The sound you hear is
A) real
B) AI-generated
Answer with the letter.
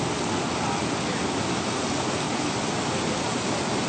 A